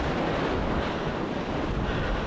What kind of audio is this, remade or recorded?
recorded